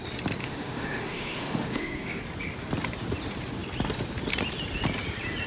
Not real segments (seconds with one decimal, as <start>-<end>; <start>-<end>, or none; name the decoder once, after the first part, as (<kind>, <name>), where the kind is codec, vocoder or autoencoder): 0.4-2.2 (autoencoder, DAC-VAE)